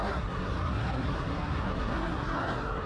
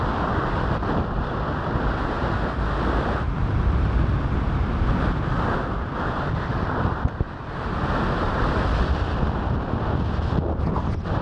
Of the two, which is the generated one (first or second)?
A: first